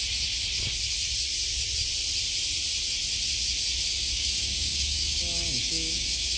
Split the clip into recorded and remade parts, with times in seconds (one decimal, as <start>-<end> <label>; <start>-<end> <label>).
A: 0.0-3.9 recorded; 3.9-6.4 remade